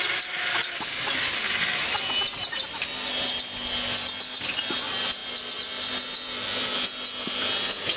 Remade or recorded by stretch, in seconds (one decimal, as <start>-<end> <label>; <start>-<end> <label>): 0.0-8.0 recorded